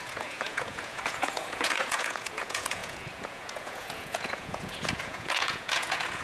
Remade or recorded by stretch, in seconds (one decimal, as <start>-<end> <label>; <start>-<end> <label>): 0.0-6.2 remade